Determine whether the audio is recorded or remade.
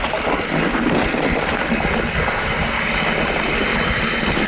recorded